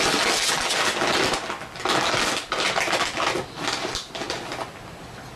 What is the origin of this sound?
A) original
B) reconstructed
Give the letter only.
A